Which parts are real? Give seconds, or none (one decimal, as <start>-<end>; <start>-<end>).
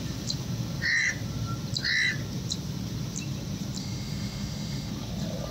0.0-3.8; 4.9-5.5